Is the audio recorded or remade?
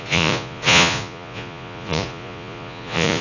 remade